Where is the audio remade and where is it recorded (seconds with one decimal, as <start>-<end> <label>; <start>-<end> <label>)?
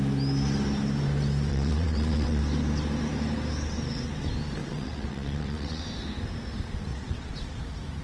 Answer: 0.0-1.5 recorded; 1.5-2.4 remade; 2.4-4.6 recorded; 4.6-5.8 remade; 5.8-6.9 recorded; 6.9-7.6 remade; 7.6-8.0 recorded